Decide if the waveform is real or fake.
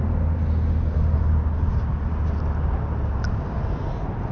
real